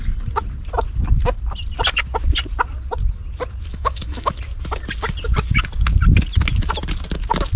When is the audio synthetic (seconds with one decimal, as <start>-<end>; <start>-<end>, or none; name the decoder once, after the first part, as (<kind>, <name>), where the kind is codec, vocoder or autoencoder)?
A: 3.7-4.3 (autoencoder, DAC-VAE)